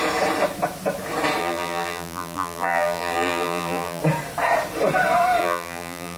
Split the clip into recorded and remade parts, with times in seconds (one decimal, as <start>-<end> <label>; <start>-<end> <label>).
0.0-1.4 recorded; 1.4-4.0 remade; 4.0-5.4 recorded; 5.4-6.2 remade